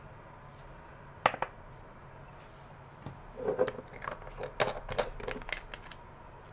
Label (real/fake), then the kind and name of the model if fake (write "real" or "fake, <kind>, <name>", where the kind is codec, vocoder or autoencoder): real